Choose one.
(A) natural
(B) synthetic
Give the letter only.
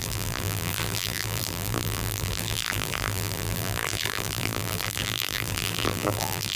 B